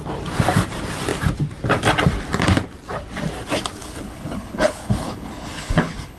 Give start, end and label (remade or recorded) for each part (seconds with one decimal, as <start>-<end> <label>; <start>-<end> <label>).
0.0-3.8 recorded; 3.8-6.2 remade